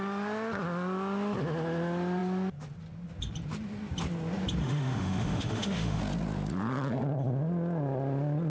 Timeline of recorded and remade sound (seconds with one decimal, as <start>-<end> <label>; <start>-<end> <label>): 0.0-4.6 recorded; 4.6-6.0 remade; 6.0-8.5 recorded